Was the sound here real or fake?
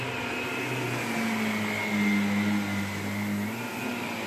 real